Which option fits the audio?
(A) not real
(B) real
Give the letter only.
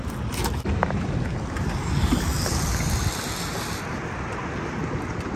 B